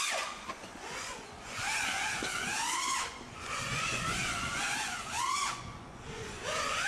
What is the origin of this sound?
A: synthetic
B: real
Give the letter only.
A